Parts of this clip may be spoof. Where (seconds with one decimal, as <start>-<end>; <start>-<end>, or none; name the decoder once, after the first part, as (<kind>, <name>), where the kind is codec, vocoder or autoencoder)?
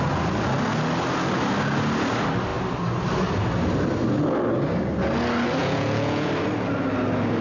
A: 5.6-6.3 (vocoder, Vocos)